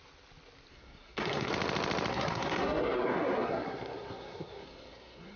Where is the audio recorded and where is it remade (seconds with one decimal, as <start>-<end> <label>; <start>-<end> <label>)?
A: 0.0-0.7 recorded; 0.7-1.5 remade; 1.5-2.1 recorded; 2.1-5.4 remade